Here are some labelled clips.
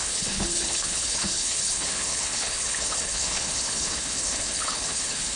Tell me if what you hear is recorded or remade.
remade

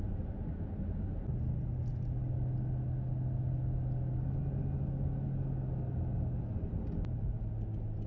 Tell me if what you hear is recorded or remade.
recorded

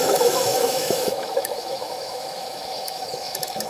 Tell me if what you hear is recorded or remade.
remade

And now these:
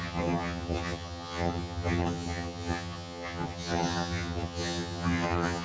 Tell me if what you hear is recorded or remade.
remade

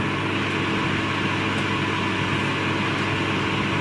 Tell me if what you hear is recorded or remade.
recorded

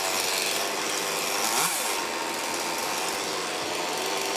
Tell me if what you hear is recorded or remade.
recorded